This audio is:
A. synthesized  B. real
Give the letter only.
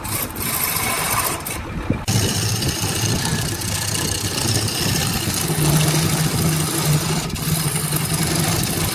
B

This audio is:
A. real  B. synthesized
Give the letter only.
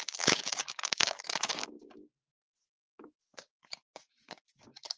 B